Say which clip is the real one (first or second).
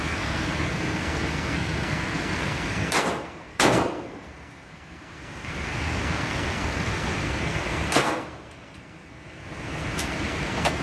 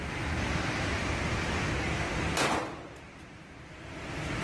second